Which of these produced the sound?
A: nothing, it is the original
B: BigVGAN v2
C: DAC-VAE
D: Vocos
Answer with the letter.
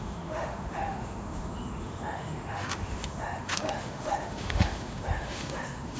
C